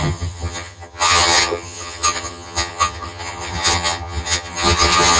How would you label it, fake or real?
fake